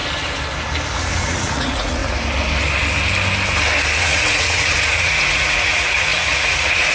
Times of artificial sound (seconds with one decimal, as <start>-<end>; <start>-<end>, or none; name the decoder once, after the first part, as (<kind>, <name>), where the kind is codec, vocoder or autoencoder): 1.2-2.0 (vocoder, Vocos); 4.0-6.9